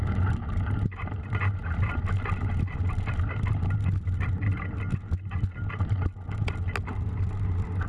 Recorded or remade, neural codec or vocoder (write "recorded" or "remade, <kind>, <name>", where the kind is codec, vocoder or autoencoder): recorded